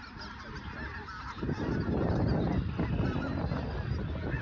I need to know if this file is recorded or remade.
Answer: recorded